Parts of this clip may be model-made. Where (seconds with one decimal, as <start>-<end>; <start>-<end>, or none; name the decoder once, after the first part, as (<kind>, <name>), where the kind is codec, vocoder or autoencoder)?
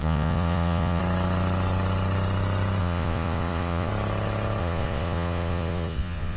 0.0-1.0 (vocoder, Vocos); 2.8-3.9; 4.6-6.4